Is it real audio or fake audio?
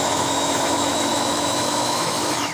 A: fake